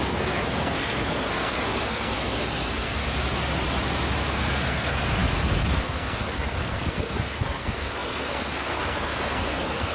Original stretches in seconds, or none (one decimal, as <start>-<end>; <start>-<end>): 3.0-4.3